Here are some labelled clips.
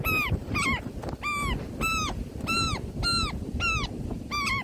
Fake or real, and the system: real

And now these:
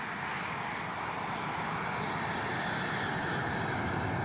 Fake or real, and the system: real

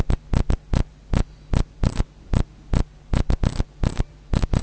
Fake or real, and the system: real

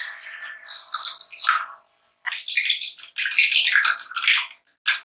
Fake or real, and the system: real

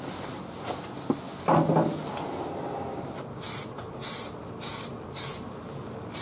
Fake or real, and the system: real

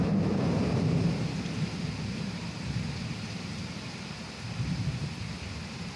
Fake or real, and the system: fake, vocoder, BigVGAN v2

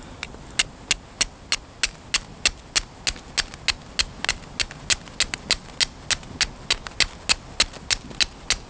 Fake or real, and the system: real